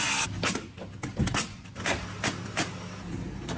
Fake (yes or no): no